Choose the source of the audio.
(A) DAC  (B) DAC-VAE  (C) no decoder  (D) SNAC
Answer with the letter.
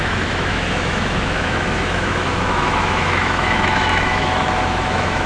B